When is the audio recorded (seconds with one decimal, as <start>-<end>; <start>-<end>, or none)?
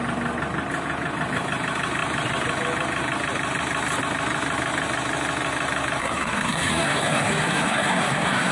0.0-6.0